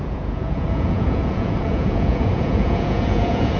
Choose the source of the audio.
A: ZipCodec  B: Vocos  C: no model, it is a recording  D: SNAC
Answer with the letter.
B